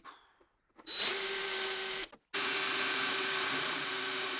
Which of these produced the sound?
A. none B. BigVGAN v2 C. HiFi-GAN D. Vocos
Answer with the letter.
A